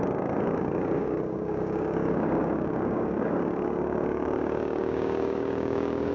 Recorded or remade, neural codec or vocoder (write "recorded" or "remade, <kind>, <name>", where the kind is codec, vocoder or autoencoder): remade, codec, DAC